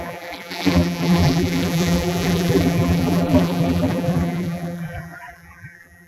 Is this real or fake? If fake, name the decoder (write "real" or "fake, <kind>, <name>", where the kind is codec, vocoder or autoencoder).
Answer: fake, vocoder, BigVGAN v2